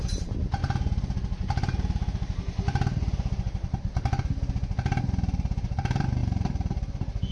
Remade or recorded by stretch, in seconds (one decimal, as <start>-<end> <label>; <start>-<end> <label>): 0.0-0.6 remade; 0.6-5.0 recorded; 5.0-7.3 remade